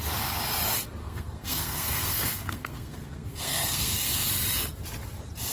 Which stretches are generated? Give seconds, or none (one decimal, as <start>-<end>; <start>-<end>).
1.0-4.3